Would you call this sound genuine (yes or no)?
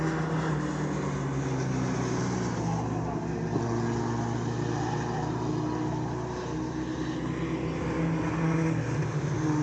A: yes